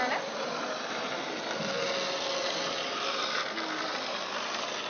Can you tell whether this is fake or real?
real